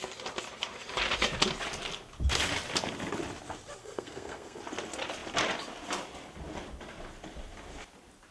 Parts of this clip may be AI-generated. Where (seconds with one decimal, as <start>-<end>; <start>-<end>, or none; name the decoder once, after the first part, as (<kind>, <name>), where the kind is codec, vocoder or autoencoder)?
3.8-4.6 (codec, SNAC)

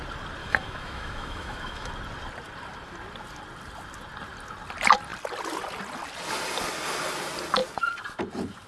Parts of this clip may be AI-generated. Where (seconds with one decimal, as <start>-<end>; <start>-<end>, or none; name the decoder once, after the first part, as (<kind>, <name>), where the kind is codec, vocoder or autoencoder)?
0.4-1.9 (autoencoder, DAC-VAE)

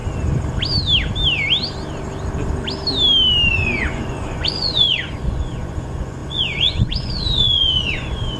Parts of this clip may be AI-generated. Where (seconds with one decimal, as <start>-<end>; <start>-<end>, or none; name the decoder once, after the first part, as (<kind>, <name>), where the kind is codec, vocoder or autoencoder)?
3.5-8.4 (vocoder, Vocos)

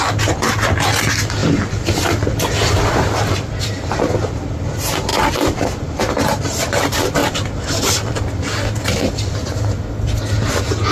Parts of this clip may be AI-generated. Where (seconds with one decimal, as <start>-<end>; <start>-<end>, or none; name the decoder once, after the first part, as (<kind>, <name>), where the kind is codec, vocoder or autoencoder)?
1.4-3.9 (vocoder, BigVGAN v2); 5.1-6.0; 7.2-9.6